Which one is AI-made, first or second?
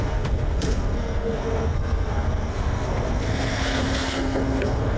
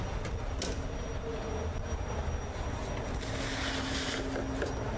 first